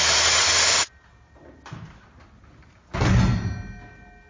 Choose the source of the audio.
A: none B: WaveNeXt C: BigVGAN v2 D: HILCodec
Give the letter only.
A